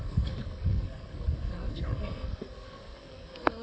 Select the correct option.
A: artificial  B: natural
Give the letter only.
A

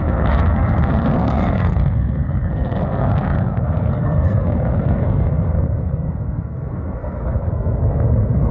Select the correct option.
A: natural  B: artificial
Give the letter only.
B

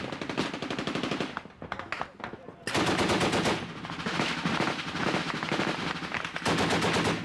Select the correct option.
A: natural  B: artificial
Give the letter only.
A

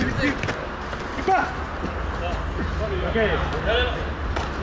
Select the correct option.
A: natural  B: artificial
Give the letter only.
A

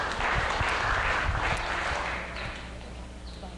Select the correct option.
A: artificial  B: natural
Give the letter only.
B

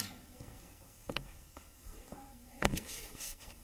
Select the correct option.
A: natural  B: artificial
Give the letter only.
B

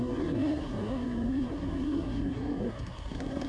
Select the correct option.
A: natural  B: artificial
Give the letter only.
B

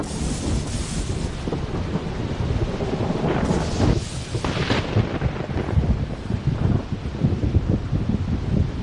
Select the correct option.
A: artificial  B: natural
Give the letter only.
B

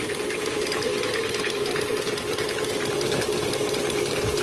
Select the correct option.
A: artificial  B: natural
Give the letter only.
B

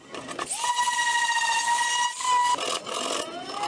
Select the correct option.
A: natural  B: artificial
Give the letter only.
A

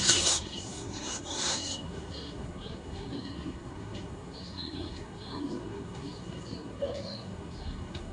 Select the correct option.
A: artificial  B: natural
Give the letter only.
A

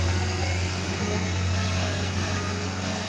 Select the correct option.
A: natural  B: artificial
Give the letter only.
B